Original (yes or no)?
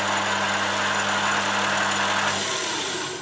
yes